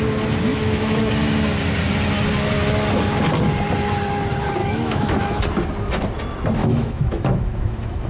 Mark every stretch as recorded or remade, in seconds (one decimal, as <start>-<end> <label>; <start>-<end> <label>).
0.0-0.5 recorded; 0.5-1.1 remade; 1.1-4.6 recorded; 4.6-5.4 remade; 5.4-6.6 recorded; 6.6-8.1 remade